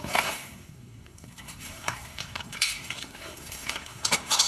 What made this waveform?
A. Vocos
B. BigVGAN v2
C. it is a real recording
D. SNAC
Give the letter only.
D